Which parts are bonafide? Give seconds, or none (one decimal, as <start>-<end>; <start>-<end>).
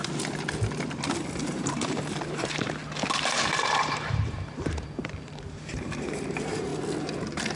0.0-1.4; 2.8-3.7; 6.7-7.6